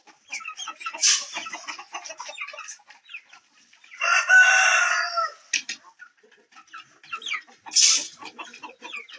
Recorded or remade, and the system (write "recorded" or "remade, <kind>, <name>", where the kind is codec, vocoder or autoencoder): recorded